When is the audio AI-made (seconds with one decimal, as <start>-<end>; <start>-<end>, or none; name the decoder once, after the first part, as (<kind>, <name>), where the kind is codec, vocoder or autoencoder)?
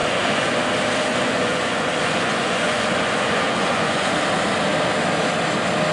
0.0-0.6 (vocoder, Vocos); 1.1-4.1